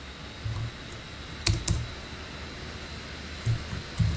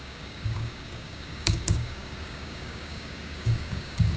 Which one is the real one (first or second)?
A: first